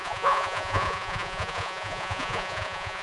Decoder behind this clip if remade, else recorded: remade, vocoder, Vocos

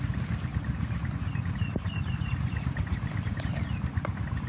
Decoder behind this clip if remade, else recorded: recorded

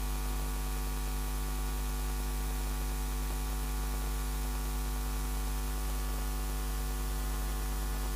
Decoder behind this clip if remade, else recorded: recorded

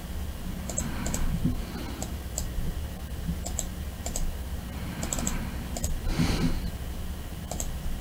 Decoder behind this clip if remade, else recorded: recorded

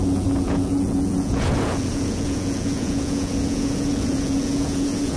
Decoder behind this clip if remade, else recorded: remade, vocoder, Vocos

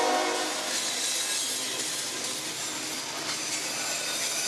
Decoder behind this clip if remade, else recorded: recorded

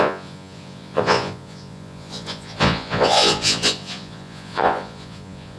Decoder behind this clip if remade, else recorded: remade, vocoder, Vocos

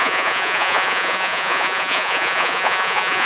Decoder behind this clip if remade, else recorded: remade, vocoder, Vocos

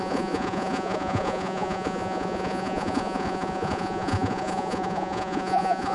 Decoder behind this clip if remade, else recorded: remade, vocoder, Vocos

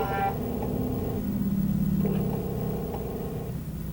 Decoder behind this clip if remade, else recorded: recorded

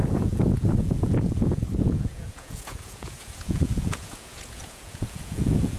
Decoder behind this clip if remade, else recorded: remade, vocoder, Vocos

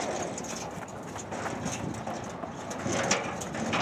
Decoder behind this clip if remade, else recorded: recorded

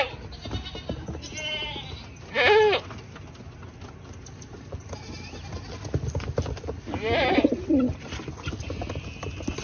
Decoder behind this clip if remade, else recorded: recorded